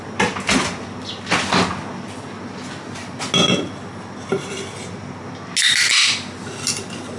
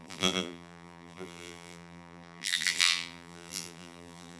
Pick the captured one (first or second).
first